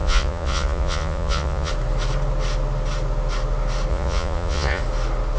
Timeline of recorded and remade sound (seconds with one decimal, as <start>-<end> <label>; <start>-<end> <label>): 0.0-1.7 remade; 1.7-3.9 recorded; 3.9-4.8 remade; 4.8-5.4 recorded